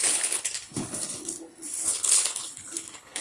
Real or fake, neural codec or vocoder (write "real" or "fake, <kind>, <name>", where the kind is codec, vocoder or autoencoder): fake, codec, HILCodec